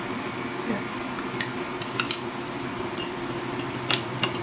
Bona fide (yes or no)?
yes